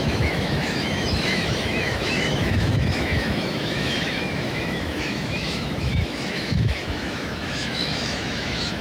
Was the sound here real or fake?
fake